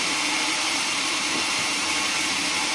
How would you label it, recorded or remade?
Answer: remade